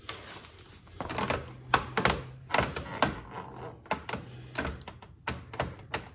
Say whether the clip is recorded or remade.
recorded